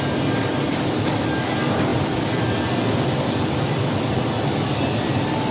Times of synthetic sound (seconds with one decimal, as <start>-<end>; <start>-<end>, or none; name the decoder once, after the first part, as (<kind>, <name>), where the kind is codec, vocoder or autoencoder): 1.9-5.5 (vocoder, BigVGAN v2)